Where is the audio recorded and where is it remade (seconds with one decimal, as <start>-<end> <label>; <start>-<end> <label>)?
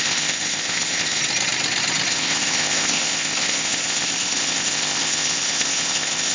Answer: 0.0-1.2 remade; 1.2-2.1 recorded; 2.1-6.3 remade